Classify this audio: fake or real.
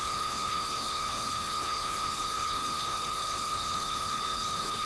fake